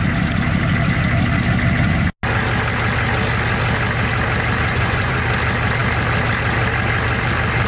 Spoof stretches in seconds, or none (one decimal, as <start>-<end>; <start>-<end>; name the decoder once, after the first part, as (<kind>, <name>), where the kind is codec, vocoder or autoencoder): 4.7-5.2 (vocoder, Vocos)